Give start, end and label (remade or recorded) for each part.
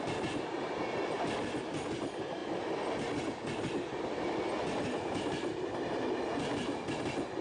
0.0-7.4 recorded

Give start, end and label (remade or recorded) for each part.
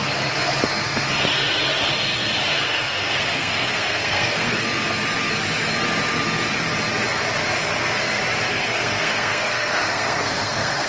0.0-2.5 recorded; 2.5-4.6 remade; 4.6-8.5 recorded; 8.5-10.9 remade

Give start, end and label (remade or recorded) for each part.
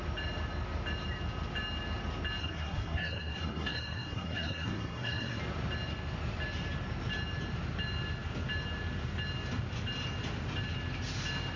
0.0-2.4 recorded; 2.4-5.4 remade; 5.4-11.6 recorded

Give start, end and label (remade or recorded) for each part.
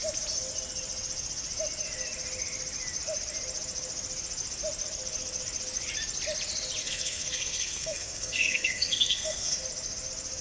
0.0-6.8 recorded; 6.8-9.6 remade; 9.6-10.4 recorded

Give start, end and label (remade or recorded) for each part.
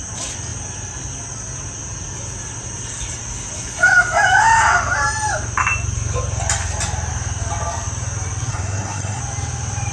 0.0-8.5 recorded; 8.5-9.2 remade; 9.2-9.9 recorded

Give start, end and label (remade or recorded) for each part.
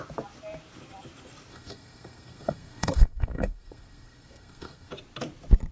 0.0-1.5 recorded; 1.5-4.9 remade; 4.9-5.7 recorded